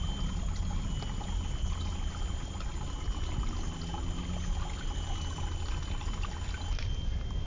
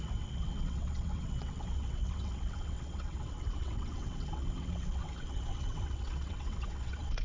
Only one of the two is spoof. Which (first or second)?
second